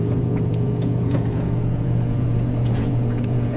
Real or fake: fake